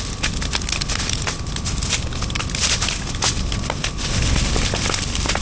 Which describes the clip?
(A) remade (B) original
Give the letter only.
B